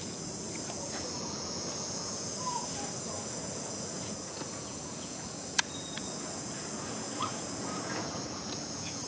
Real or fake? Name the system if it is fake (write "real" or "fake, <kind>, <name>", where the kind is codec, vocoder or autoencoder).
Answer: fake, vocoder, Vocos